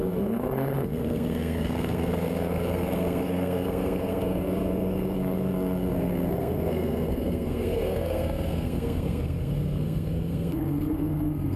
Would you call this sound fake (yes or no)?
yes